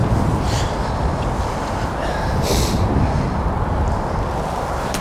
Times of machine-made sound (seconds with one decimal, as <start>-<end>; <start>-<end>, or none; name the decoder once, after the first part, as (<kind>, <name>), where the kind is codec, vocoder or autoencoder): none